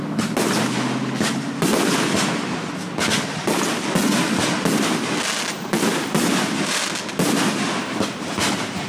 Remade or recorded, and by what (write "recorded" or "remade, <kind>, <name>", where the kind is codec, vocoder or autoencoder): recorded